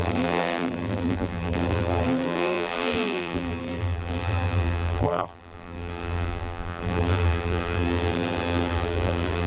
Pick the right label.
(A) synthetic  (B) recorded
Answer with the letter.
A